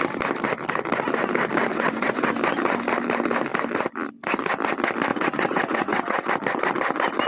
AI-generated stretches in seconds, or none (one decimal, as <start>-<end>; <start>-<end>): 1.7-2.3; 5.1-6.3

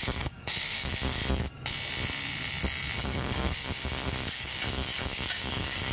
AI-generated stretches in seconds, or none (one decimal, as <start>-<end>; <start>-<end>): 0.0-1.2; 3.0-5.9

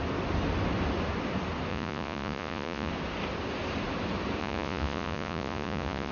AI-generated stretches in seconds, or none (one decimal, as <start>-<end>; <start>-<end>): 1.7-2.9; 4.4-6.1